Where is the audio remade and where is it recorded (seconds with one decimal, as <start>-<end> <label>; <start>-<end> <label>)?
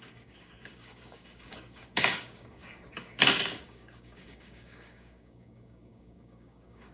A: 0.0-6.9 remade